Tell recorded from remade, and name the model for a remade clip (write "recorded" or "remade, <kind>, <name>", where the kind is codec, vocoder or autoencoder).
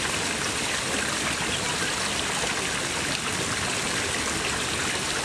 recorded